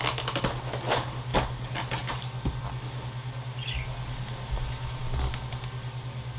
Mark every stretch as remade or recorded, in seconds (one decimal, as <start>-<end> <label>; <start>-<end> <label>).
0.0-6.4 recorded